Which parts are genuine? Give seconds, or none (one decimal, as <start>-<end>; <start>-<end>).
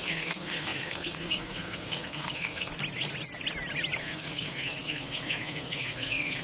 2.7-4.0